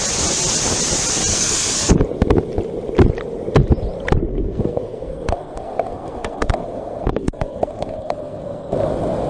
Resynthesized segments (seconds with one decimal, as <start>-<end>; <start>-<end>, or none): 1.3-1.9; 4.3-8.8